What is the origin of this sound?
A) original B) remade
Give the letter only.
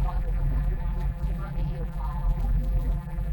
B